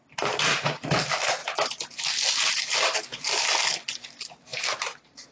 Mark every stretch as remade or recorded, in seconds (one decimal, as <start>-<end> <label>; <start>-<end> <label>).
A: 0.0-5.3 recorded

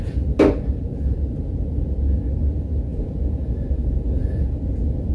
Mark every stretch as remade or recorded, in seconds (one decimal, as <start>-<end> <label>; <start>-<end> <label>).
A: 0.0-2.9 recorded; 2.9-5.1 remade

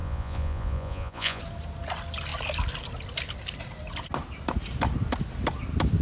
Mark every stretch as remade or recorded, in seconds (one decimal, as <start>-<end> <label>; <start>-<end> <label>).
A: 0.0-1.4 remade; 1.4-6.0 recorded

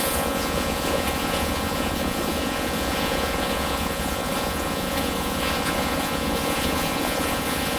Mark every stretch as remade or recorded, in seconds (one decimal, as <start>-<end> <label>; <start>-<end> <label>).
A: 0.0-7.8 remade

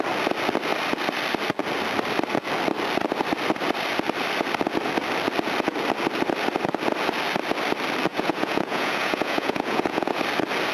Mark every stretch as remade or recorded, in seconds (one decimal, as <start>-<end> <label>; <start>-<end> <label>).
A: 0.0-8.1 recorded; 8.1-10.2 remade; 10.2-10.7 recorded

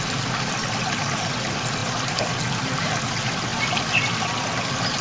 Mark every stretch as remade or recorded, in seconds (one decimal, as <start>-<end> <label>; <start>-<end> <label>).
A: 0.0-5.0 recorded